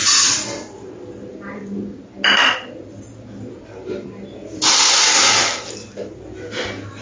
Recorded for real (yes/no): yes